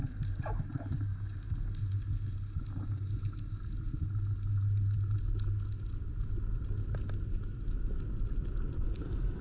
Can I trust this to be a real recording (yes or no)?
yes